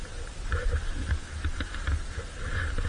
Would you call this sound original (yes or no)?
yes